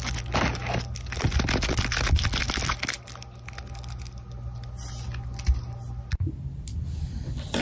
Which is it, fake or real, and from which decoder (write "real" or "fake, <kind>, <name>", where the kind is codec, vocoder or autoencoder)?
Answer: real